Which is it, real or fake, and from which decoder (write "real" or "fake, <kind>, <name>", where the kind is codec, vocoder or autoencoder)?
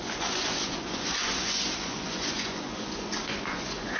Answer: fake, vocoder, Vocos